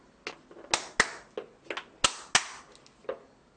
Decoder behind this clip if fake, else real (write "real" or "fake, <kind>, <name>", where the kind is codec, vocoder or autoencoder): real